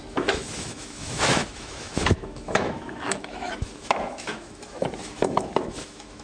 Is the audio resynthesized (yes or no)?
yes